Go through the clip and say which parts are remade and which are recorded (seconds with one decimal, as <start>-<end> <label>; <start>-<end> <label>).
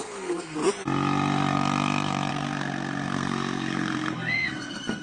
0.0-0.6 remade; 0.6-2.3 recorded; 2.3-5.0 remade